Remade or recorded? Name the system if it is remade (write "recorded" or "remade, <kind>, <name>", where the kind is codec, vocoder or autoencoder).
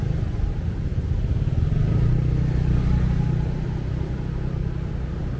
recorded